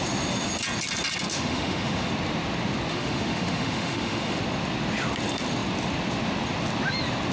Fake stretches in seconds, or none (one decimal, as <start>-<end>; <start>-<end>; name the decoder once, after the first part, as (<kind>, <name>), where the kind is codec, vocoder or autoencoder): 1.3-2.1 (autoencoder, DAC-VAE); 2.9-4.4